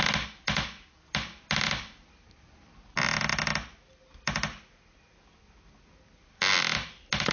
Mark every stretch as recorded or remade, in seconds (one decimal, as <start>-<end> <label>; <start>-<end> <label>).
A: 0.0-7.3 recorded